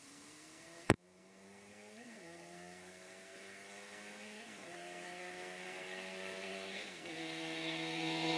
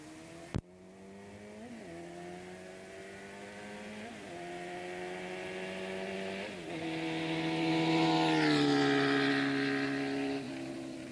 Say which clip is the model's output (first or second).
first